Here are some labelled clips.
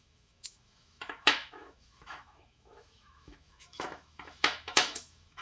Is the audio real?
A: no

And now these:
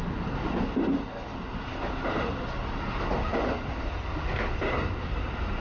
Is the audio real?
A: yes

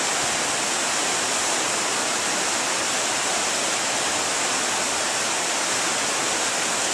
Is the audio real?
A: no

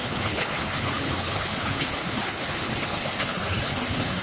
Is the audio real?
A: no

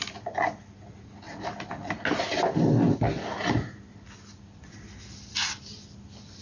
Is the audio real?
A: yes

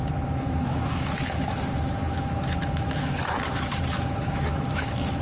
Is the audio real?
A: no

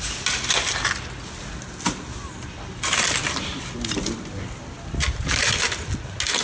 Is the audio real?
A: yes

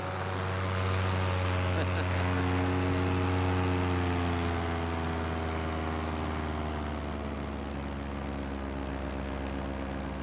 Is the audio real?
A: yes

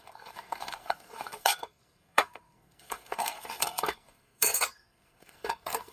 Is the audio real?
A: no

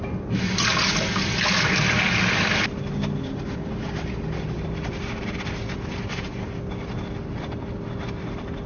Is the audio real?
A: yes